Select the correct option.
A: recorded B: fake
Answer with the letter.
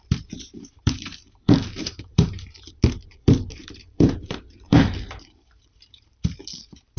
B